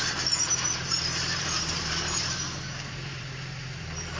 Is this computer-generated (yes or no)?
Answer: yes